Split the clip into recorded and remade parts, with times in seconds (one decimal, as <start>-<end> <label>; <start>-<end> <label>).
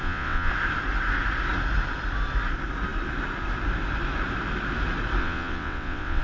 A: 0.0-0.5 remade; 0.5-5.2 recorded; 5.2-6.2 remade